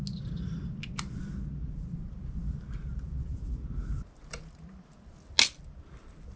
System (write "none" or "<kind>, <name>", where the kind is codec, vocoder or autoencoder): none